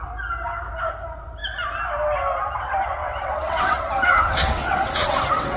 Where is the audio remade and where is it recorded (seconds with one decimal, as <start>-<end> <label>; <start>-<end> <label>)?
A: 0.0-3.0 recorded; 3.0-3.8 remade; 3.8-4.4 recorded; 4.4-5.6 remade